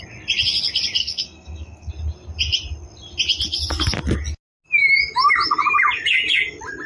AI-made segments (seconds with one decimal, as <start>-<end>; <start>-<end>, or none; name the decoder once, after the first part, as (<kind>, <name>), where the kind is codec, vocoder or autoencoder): 1.0-1.9 (codec, SNAC)